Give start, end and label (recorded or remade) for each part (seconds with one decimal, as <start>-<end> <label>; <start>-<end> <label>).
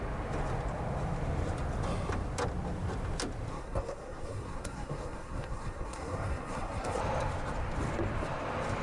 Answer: 0.0-3.5 recorded; 3.5-7.0 remade; 7.0-8.8 recorded